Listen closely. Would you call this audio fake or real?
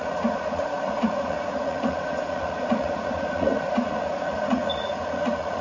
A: fake